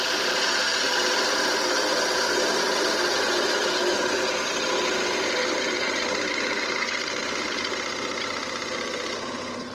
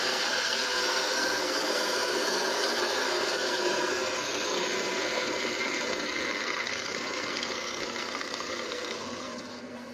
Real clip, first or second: first